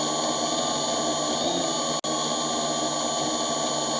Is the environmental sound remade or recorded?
recorded